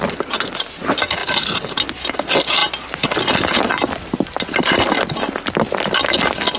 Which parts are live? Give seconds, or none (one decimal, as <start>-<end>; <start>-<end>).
0.0-6.6